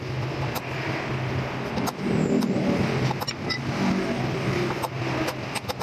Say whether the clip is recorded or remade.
recorded